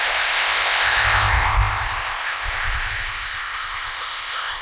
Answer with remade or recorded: remade